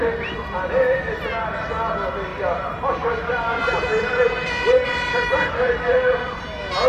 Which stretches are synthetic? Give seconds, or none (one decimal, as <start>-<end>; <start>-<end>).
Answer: 2.3-6.4